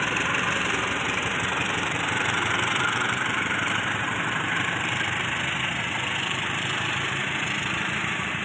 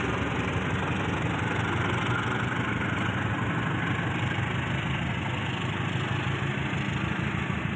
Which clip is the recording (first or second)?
second